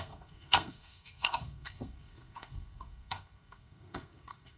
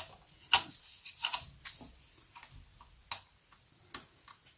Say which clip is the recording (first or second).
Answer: second